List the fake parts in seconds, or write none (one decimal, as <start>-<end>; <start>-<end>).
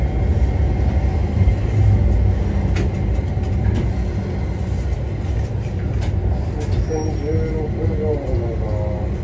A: none